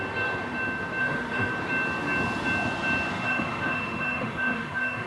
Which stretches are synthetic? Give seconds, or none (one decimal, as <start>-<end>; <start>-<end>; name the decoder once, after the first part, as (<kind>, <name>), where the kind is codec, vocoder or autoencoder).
1.0-1.5 (autoencoder, DAC-VAE); 3.1-5.1